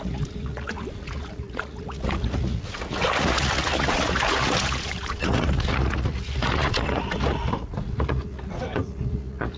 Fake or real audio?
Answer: fake